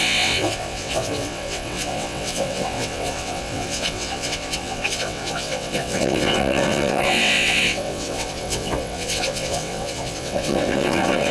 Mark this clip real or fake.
fake